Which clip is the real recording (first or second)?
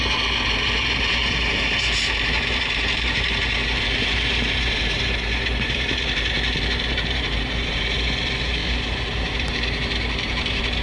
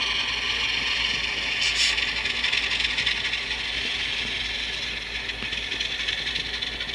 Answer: second